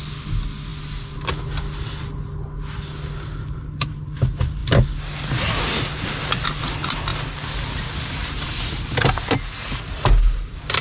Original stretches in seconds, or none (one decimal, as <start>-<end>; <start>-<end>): 0.0-10.8